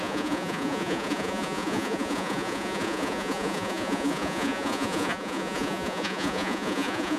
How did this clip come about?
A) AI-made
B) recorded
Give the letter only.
A